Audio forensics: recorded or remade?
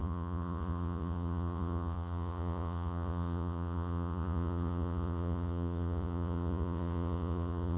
remade